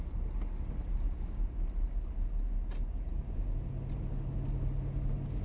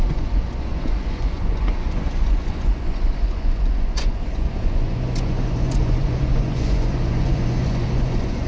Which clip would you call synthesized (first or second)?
second